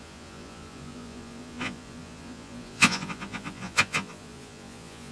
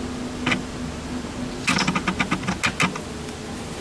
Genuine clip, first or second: second